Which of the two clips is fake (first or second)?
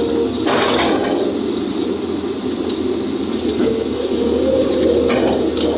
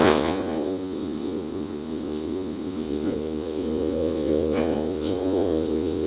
second